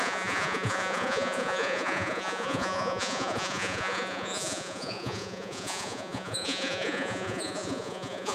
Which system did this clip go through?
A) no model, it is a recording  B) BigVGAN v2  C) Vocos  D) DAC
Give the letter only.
C